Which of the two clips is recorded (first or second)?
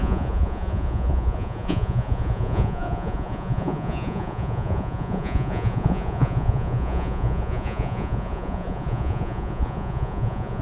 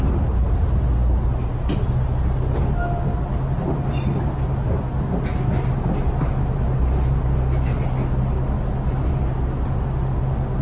second